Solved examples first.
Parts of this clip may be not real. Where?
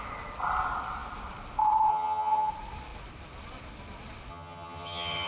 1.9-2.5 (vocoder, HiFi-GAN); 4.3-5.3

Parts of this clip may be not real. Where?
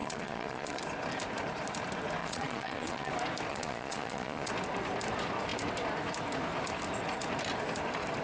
0.0-0.8 (vocoder, Vocos); 2.2-3.1; 3.5-4.5